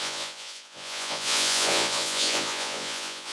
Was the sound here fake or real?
fake